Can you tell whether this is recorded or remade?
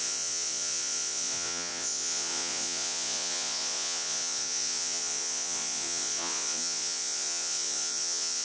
remade